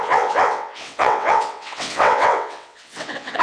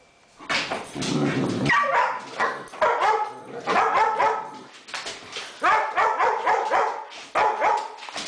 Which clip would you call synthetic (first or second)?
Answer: first